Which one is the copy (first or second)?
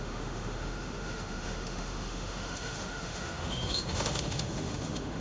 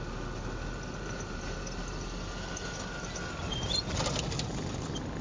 first